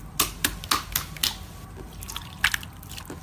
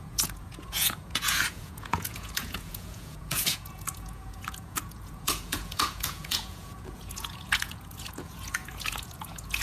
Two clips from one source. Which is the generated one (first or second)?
second